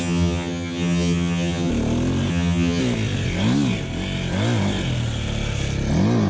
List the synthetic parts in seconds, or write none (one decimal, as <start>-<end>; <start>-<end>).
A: 0.0-1.7; 2.3-2.8